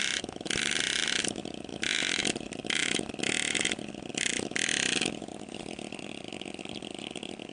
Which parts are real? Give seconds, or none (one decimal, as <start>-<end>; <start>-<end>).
0.0-7.5

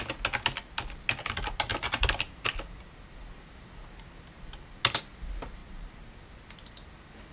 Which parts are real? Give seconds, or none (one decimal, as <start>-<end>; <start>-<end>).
0.0-1.7; 4.8-5.6